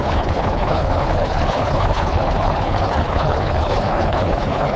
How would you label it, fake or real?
fake